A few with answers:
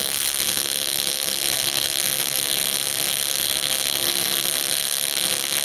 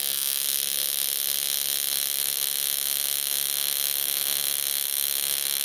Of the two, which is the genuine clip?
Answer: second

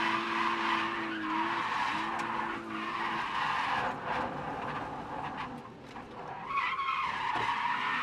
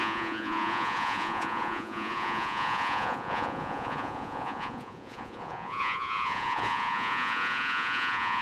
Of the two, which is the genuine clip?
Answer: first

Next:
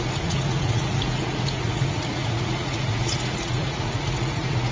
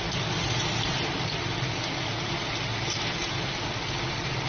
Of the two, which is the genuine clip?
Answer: second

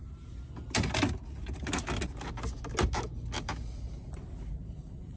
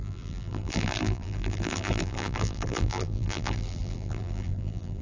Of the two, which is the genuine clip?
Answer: first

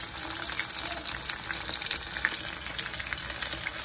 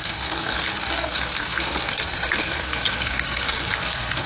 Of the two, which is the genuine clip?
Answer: first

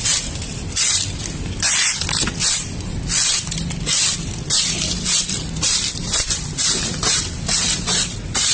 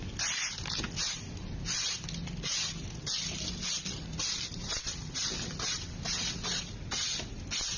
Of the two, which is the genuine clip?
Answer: second